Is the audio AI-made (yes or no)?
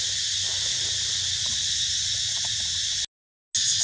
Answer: no